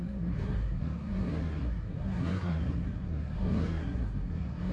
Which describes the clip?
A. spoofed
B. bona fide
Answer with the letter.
A